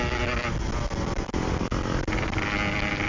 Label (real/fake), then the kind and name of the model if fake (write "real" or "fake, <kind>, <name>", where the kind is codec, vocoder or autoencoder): real